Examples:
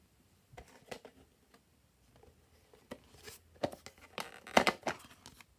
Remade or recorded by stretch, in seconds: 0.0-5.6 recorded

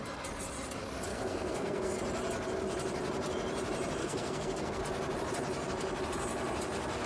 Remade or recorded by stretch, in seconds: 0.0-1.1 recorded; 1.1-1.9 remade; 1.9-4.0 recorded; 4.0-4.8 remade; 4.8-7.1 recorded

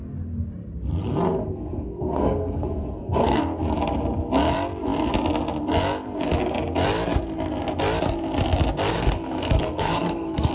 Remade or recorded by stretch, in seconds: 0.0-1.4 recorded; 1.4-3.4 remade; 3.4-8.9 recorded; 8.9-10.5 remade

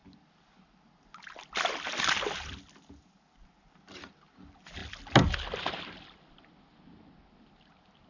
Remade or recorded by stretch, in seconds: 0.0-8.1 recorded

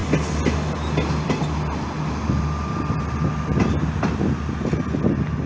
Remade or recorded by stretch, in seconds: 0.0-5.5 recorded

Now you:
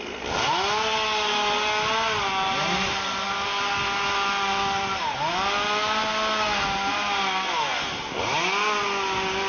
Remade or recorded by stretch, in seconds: 0.0-9.5 recorded

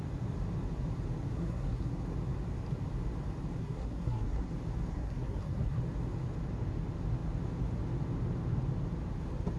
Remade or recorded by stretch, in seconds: 0.0-1.3 recorded; 1.3-1.9 remade; 1.9-3.6 recorded; 3.6-4.5 remade; 4.5-4.9 recorded; 4.9-5.8 remade; 5.8-9.6 recorded

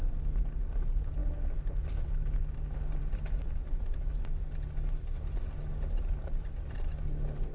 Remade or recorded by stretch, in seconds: 0.0-7.5 recorded